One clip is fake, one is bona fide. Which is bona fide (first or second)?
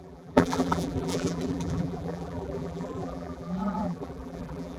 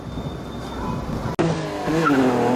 second